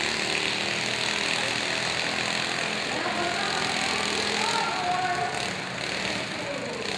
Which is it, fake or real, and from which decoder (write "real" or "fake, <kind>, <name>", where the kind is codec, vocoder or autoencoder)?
real